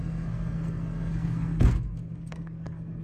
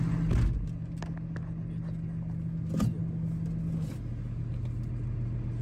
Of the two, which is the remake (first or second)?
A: first